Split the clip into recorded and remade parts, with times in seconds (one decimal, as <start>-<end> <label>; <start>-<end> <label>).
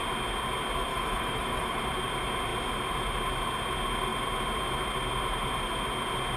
0.0-0.9 recorded; 0.9-1.8 remade; 1.8-6.4 recorded